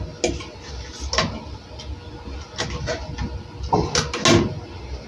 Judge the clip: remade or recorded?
recorded